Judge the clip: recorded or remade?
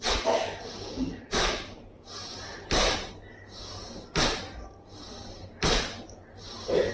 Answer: recorded